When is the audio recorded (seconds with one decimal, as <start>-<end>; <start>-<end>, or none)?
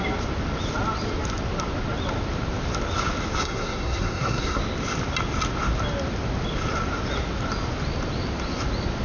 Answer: 0.0-3.4; 4.6-9.0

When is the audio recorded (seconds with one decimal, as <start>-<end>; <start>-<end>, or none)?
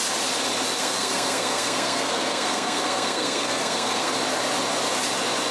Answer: 0.0-0.8; 4.1-5.5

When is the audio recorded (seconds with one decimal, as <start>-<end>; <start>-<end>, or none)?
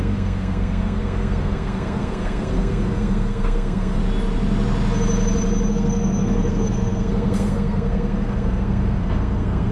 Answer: 4.0-5.7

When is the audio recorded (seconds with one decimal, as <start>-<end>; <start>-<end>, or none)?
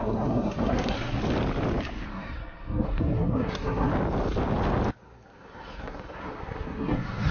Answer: 1.2-2.1; 3.9-4.9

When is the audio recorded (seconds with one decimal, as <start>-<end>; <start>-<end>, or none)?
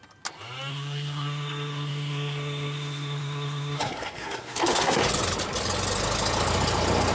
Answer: 0.0-0.7; 5.0-7.1